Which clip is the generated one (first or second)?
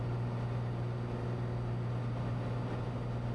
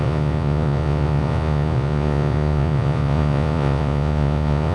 second